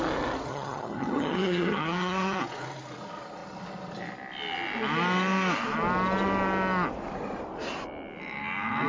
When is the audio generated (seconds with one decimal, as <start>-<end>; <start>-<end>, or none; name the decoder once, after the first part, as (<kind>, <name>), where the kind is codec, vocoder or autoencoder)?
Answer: 0.5-2.4 (vocoder, HiFi-GAN)